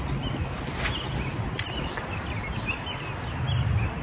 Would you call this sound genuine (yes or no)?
yes